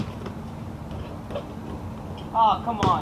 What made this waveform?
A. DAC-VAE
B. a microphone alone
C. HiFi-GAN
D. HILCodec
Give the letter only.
B